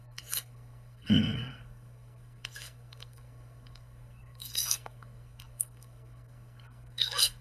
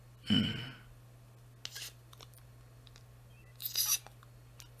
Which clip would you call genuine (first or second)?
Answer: second